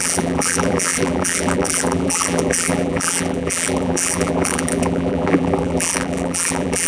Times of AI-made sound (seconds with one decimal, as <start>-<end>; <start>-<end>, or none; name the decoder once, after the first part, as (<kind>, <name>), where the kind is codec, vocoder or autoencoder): 0.0-6.9 (vocoder, BigVGAN v2)